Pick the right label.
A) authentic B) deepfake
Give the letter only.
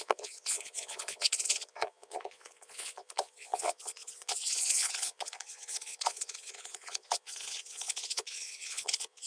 B